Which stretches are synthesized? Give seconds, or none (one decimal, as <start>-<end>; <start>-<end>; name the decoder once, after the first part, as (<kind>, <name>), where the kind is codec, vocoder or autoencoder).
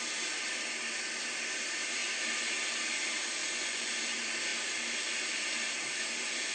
3.4-4.0 (vocoder, Vocos)